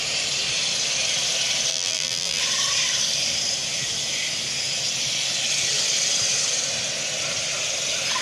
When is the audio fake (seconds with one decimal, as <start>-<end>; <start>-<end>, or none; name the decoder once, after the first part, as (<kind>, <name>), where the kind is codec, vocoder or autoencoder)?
1.7-2.4 (vocoder, BigVGAN v2)